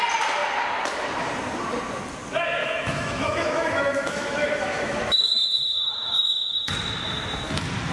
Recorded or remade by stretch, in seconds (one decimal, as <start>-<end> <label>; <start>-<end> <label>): 0.0-2.6 recorded; 2.6-6.7 remade; 6.7-7.9 recorded